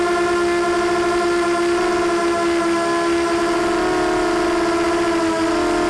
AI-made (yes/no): no